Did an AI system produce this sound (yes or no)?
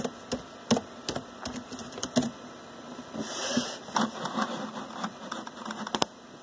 no